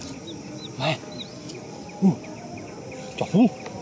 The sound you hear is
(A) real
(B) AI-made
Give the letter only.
A